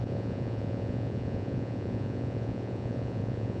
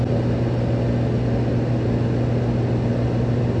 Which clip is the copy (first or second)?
first